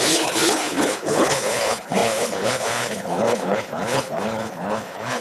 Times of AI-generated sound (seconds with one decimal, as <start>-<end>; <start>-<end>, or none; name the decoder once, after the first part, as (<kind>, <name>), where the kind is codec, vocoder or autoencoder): 0.0-5.2 (codec, HILCodec)